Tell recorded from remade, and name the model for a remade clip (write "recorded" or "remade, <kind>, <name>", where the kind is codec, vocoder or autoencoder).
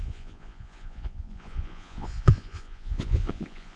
remade, vocoder, Vocos